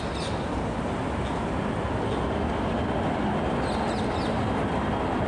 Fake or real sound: real